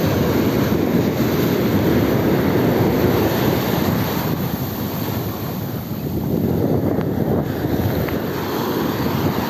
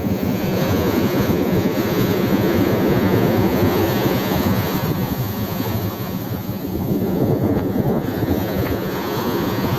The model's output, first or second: second